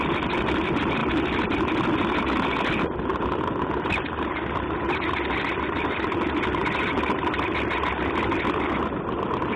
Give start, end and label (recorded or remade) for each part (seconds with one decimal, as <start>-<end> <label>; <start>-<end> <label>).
0.0-9.6 recorded